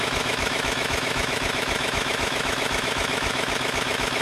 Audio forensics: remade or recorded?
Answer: remade